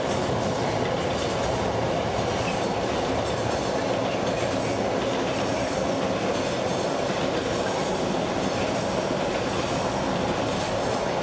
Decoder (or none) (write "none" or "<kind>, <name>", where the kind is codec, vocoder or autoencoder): none